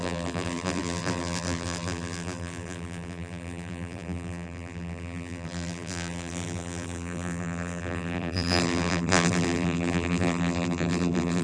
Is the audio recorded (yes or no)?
no